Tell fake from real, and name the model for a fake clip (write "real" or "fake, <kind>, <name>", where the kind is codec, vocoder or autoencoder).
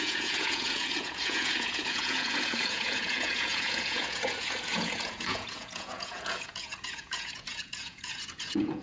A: fake, vocoder, Vocos